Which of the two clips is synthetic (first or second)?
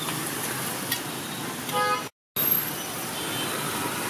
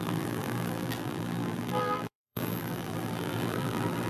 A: second